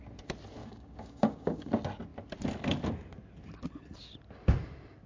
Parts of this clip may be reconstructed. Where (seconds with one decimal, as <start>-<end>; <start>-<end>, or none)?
0.6-1.7